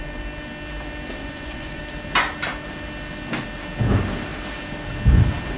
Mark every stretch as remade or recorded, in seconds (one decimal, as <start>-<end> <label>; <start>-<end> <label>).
0.0-1.2 recorded; 1.2-1.8 remade; 1.8-5.6 recorded